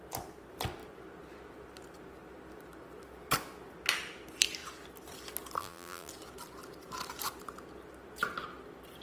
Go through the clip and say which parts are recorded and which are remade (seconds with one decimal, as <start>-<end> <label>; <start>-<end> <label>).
0.0-5.6 recorded; 5.6-6.1 remade; 6.1-9.0 recorded